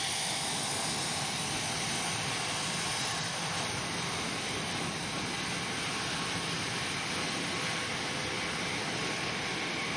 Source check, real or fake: real